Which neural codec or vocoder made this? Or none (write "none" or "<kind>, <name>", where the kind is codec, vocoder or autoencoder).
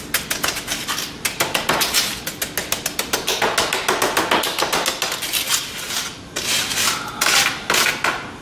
none